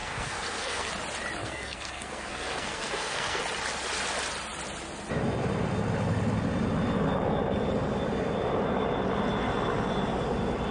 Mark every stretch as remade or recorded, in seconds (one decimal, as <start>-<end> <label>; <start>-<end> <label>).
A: 0.0-0.9 remade; 0.9-1.4 recorded; 1.4-3.4 remade; 3.4-10.7 recorded